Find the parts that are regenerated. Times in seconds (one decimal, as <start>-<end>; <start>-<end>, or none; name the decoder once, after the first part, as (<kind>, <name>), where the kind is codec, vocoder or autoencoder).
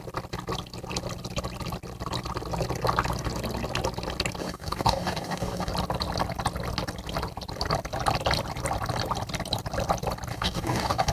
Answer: 4.4-5.7 (codec, DAC); 10.3-11.1